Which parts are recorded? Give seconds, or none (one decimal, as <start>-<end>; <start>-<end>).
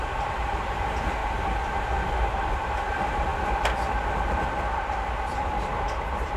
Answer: 1.2-2.4